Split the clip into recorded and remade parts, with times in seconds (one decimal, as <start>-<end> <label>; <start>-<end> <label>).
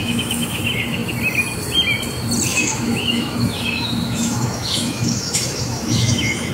0.0-0.6 remade; 0.6-2.5 recorded; 2.5-6.5 remade